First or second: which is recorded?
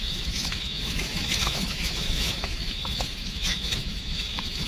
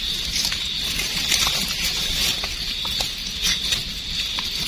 second